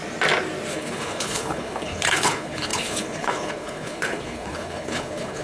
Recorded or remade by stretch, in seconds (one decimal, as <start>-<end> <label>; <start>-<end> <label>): 0.0-0.7 recorded; 0.7-5.4 remade